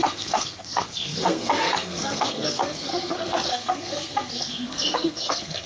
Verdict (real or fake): fake